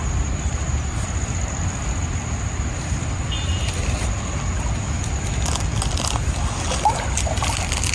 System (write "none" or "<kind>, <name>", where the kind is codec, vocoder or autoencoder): none